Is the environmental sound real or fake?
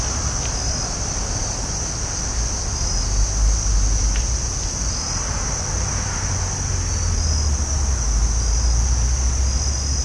real